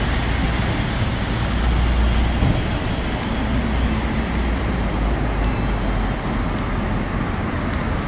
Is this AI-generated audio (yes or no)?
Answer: no